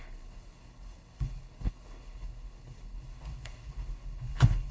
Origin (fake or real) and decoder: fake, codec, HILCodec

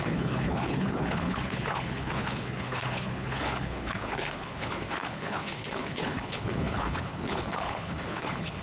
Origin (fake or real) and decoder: fake, codec, HILCodec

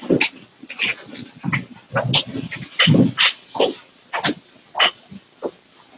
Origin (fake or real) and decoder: real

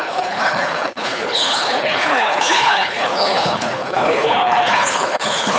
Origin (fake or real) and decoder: fake, codec, HILCodec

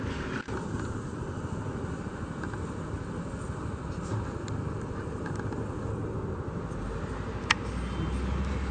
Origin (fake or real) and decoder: real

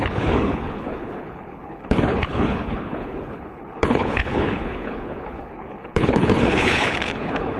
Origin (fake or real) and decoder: fake, codec, HILCodec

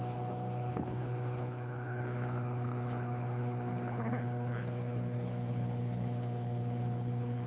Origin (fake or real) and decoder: fake, codec, HILCodec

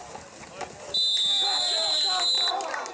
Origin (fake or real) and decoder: real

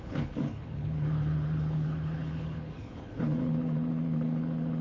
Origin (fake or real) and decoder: fake, codec, HILCodec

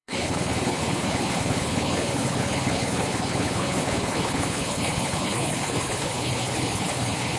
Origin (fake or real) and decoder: fake, codec, HILCodec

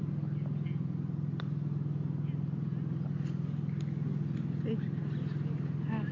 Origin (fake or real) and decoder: real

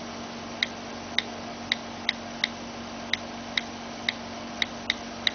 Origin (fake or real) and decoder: real